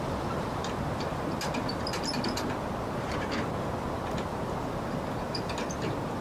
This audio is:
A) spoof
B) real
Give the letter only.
B